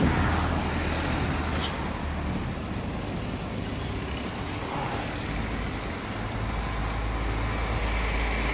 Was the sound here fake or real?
real